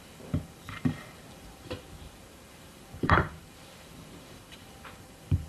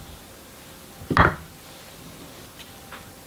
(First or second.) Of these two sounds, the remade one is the first